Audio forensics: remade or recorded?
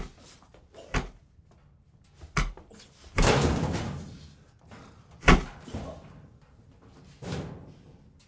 recorded